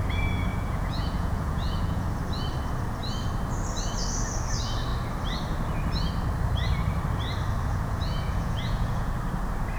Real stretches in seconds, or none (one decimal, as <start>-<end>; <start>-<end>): 0.0-0.5; 2.1-7.7; 9.1-9.8